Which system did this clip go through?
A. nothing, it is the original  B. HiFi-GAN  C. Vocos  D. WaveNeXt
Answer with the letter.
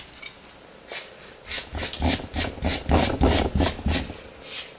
A